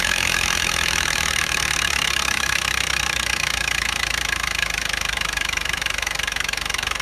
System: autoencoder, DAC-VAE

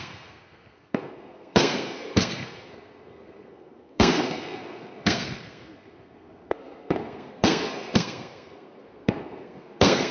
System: codec, SNAC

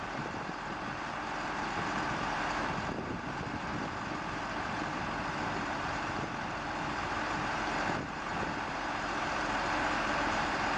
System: vocoder, BigVGAN v2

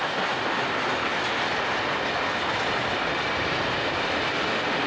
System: none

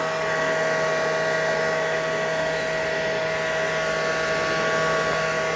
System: none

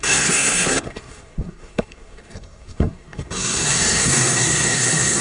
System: codec, SNAC